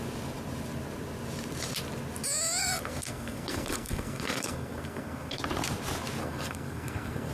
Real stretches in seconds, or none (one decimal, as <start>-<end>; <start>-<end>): 0.0-2.6; 5.4-6.2